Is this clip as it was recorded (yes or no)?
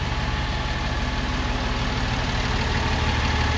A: yes